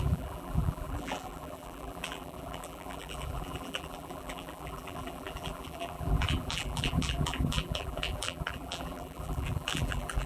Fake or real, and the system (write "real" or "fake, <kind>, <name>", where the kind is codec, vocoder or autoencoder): fake, vocoder, BigVGAN v2